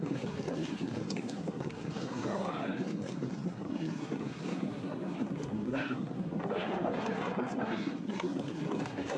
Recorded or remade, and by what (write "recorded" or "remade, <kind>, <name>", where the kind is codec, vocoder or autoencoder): remade, codec, SNAC